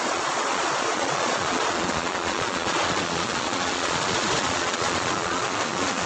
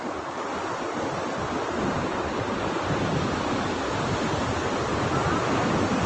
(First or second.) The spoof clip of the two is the first